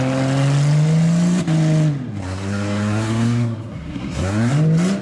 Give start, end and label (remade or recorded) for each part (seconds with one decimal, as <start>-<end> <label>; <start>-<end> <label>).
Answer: 0.0-2.2 recorded; 2.2-4.5 remade; 4.5-5.0 recorded